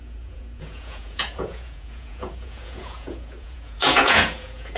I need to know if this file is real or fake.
fake